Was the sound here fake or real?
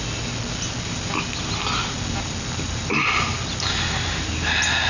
real